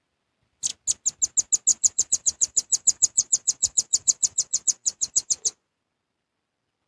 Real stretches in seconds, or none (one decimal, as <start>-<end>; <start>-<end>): 0.0-1.7; 5.8-6.9